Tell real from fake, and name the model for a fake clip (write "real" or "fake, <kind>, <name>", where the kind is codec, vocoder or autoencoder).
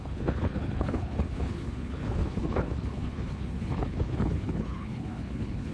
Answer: fake, codec, HILCodec